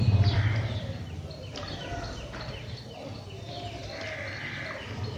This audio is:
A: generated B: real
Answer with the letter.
A